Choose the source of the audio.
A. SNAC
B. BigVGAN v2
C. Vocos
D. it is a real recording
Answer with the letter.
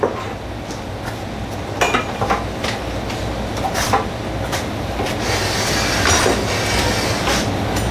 D